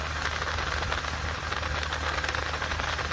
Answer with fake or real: real